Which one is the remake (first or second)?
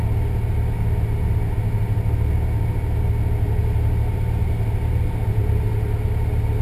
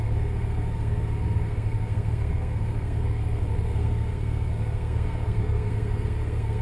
second